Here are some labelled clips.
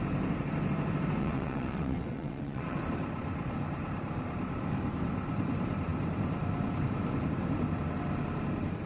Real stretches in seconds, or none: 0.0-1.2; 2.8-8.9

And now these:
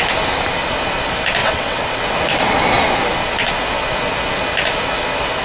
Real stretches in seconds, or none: 0.0-1.4; 2.0-5.4

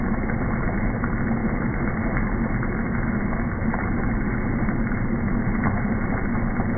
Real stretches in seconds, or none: 0.0-6.8

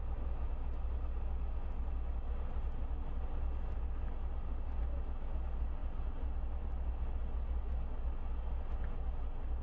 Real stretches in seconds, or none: 0.0-9.6

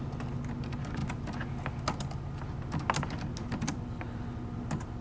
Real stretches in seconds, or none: 0.0-5.0